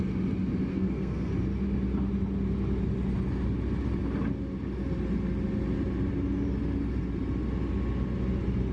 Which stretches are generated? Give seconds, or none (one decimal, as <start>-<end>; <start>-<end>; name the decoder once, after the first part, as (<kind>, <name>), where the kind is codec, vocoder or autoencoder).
0.7-1.3 (codec, SNAC)